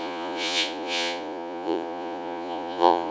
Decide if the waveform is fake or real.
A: fake